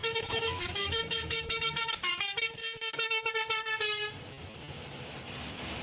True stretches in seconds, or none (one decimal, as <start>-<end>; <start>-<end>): 2.1-2.6; 3.3-5.8